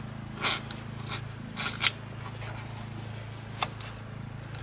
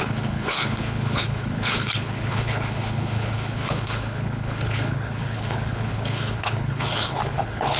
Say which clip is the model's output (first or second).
second